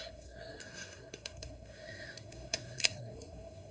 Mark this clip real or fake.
fake